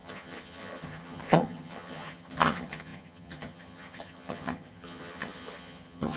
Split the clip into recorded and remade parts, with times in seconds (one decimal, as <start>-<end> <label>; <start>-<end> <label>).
0.0-6.2 remade